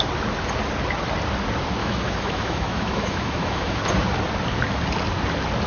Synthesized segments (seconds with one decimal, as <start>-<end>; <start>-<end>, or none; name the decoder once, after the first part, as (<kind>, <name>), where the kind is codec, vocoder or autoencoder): 1.8-3.8 (autoencoder, DAC-VAE)